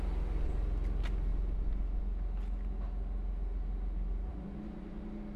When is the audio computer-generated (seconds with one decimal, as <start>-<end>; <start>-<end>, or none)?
none